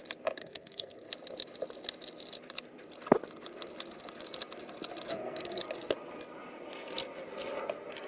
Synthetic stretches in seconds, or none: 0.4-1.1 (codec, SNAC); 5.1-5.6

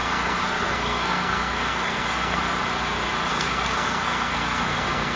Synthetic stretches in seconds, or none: 0.0-2.4 (codec, SNAC); 3.3-5.2

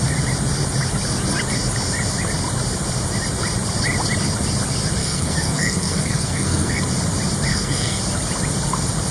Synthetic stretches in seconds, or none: 5.0-6.8 (codec, SNAC); 7.5-8.0

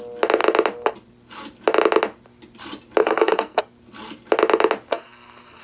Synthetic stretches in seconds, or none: 3.0-3.6 (codec, SNAC); 4.9-5.6

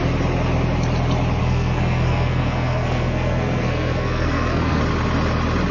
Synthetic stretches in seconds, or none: 1.4-4.8 (codec, SNAC)

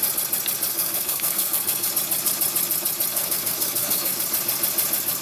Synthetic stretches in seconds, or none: 0.7-1.9 (codec, SNAC); 3.1-4.2

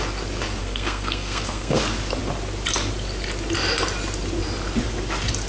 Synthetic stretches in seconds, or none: 0.6-1.8 (codec, SNAC)

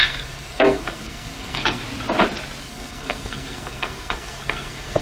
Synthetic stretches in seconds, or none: 0.0-1.8 (codec, SNAC); 2.6-5.0